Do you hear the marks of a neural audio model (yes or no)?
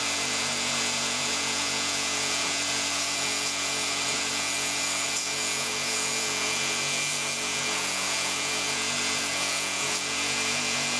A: yes